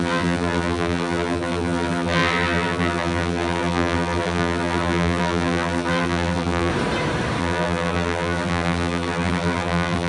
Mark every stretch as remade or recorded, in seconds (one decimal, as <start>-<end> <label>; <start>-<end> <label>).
0.0-6.7 remade; 6.7-7.4 recorded; 7.4-10.1 remade